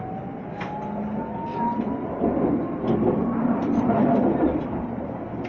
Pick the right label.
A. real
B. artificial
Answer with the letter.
A